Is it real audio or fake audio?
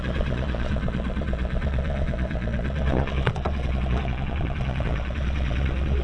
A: fake